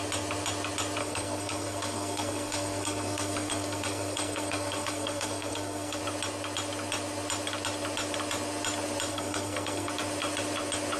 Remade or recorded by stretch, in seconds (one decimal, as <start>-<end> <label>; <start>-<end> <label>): 0.0-1.0 recorded; 1.0-6.0 remade; 6.0-9.1 recorded; 9.1-9.9 remade; 9.9-11.0 recorded

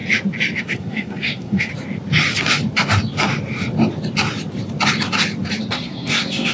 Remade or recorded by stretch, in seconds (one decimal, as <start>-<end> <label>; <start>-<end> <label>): 0.0-0.6 recorded; 0.6-1.7 remade; 1.7-5.6 recorded; 5.6-6.5 remade

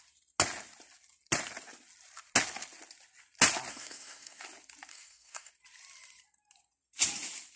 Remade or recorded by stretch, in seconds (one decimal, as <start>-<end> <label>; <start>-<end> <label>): 0.0-3.7 recorded; 3.7-4.4 remade; 4.4-4.9 recorded; 4.9-5.5 remade; 5.5-7.6 recorded